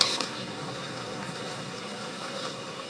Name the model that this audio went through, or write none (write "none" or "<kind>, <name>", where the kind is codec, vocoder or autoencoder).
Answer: codec, SNAC